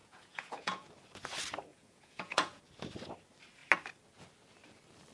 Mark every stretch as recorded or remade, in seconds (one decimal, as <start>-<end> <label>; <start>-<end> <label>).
0.0-0.9 remade; 0.9-1.7 recorded; 1.7-2.6 remade; 2.6-5.1 recorded